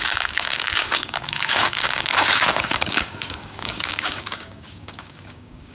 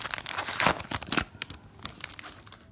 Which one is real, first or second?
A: second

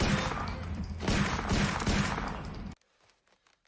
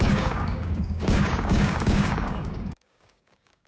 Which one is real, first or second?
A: first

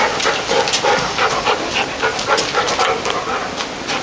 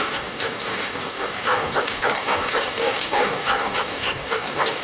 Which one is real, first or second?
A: first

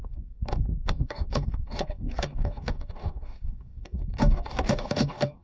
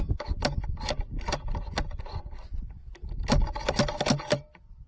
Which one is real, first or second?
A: second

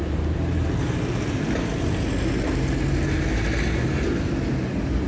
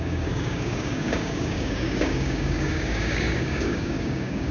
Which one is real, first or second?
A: first